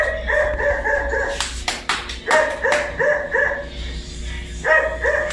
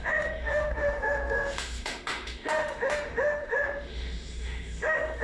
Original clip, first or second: first